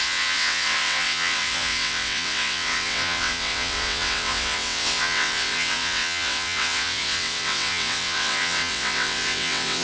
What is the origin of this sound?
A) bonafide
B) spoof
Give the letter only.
B